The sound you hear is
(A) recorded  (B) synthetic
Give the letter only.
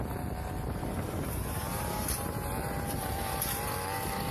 B